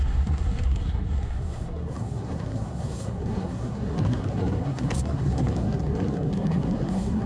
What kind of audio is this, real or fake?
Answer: fake